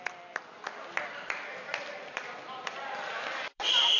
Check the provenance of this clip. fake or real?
fake